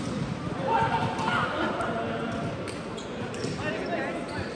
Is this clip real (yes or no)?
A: yes